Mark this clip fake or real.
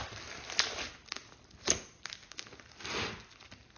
real